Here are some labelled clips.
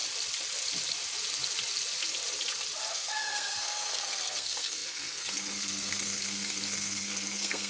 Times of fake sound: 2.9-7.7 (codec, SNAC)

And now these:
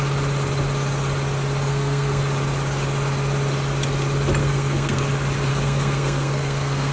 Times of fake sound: 1.7-2.2 (codec, SNAC); 4.4-5.0; 5.5-6.9

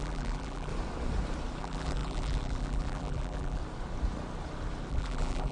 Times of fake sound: 0.0-0.7 (vocoder, BigVGAN v2); 1.6-3.6; 4.9-5.5

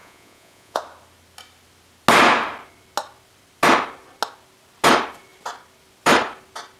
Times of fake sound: 0.0-0.8 (vocoder, Vocos)

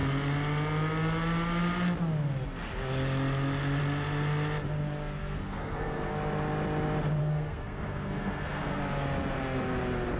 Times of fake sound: 5.2-6.1 (codec, SNAC); 7.2-8.8

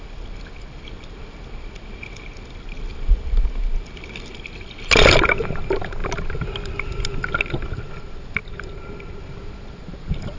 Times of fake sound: none